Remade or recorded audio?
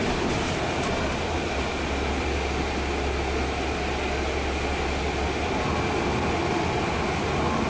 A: recorded